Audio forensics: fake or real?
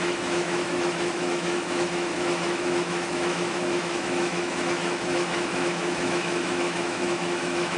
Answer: fake